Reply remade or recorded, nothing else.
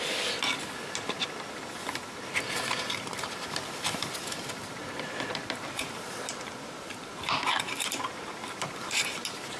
remade